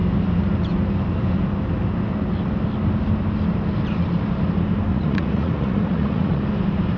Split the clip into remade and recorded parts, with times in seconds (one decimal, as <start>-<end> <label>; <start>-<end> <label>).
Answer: 0.0-4.9 recorded; 4.9-6.4 remade; 6.4-7.0 recorded